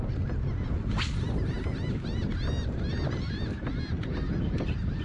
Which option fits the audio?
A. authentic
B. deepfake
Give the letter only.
A